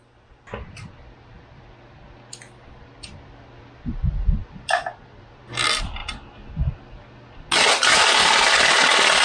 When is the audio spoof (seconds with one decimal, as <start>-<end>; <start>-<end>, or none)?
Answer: none